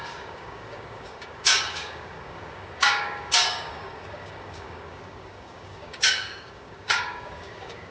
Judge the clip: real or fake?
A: fake